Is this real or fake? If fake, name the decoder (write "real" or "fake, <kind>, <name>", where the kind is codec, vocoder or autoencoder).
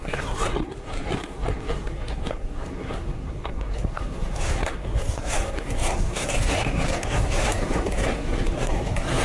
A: fake, codec, SNAC